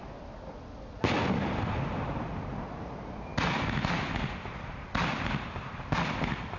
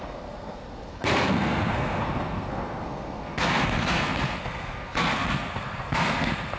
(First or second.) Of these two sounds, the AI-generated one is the second